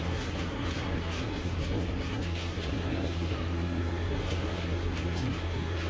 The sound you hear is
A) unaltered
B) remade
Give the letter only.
B